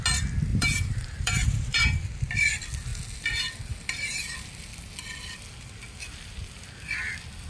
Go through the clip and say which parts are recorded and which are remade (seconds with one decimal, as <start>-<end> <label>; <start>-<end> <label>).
0.0-0.5 recorded; 0.5-2.0 remade; 2.0-7.5 recorded